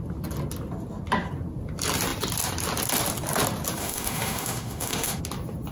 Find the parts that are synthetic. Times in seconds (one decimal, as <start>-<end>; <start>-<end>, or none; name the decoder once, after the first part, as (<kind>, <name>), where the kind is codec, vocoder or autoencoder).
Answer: 3.8-5.2 (autoencoder, DAC-VAE)